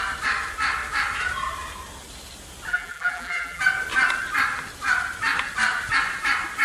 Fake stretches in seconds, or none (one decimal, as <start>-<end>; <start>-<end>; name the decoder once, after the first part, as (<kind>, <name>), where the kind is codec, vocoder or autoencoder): 2.7-3.6 (vocoder, BigVGAN v2)